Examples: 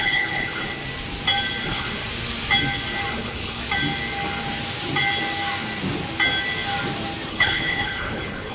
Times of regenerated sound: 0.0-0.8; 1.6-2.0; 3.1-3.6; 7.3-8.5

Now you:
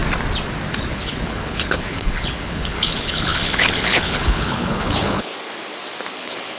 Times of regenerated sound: 0.9-5.3; 6.1-6.6

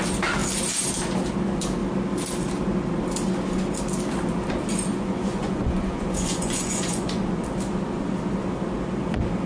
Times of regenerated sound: 4.9-7.2

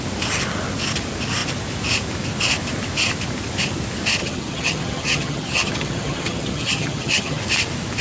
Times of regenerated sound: 4.2-7.4

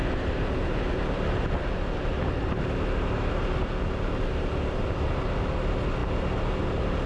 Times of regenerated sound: none

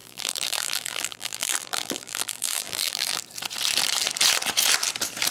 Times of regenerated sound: 0.0-3.2

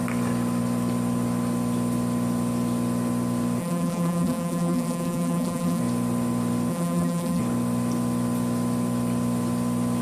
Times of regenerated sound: 3.6-5.8; 6.7-7.4